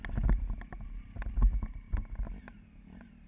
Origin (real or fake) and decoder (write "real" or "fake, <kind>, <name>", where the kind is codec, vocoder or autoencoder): real